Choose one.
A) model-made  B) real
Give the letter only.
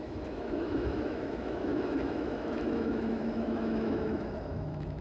A